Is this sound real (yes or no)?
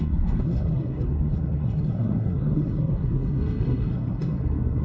no